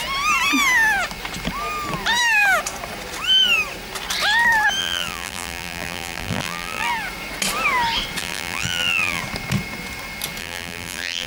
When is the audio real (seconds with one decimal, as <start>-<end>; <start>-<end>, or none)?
0.0-4.8; 6.9-8.2; 9.2-10.4